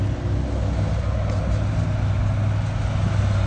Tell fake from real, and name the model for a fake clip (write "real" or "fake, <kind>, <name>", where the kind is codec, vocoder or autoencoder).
real